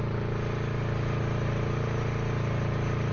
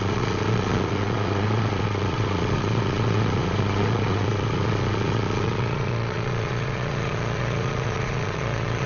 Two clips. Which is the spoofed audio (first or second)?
second